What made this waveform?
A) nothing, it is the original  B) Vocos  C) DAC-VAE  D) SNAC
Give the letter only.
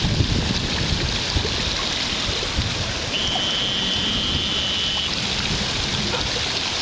A